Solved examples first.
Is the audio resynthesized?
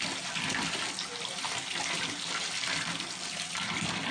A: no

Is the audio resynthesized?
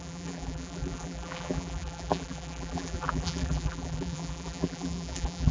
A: yes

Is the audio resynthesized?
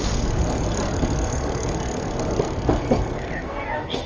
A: yes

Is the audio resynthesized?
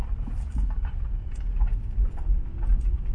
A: no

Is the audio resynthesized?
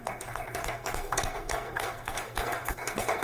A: yes